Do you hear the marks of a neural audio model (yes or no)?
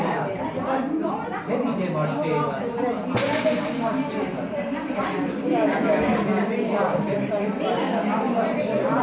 no